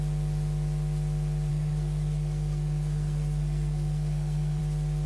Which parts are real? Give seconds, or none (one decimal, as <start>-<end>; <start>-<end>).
0.0-1.5; 4.6-5.1